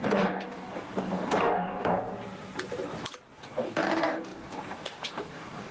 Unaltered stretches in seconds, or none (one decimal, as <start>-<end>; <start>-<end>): 2.1-3.4